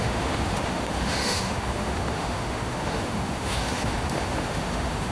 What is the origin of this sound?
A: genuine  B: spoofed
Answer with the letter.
B